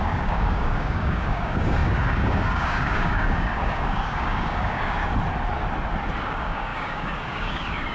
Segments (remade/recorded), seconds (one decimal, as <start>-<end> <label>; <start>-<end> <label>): 0.0-5.0 remade; 5.0-6.2 recorded; 6.2-7.9 remade